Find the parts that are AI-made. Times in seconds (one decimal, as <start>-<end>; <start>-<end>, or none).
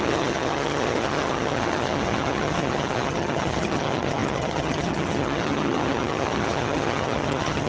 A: 0.0-7.7